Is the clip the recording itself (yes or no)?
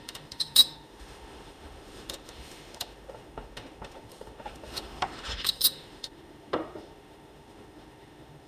no